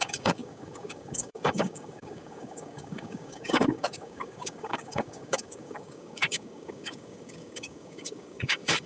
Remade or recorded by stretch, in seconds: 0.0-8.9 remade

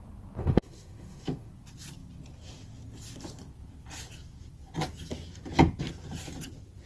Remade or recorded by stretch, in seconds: 0.0-0.4 recorded; 0.4-1.5 remade; 1.5-6.9 recorded

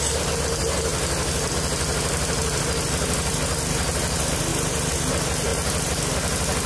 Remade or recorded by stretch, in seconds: 0.0-6.7 recorded

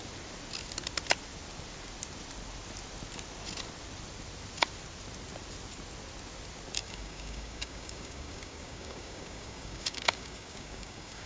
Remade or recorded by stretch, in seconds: 0.0-6.8 recorded; 6.8-11.3 remade

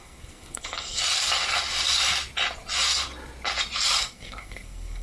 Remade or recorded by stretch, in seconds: 0.0-1.0 remade; 1.0-4.0 recorded; 4.0-5.0 remade

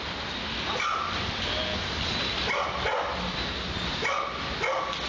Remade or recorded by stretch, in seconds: 0.0-5.1 recorded